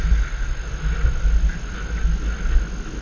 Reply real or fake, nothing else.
real